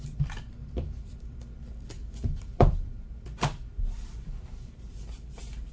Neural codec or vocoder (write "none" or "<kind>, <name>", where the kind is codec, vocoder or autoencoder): vocoder, BigVGAN v2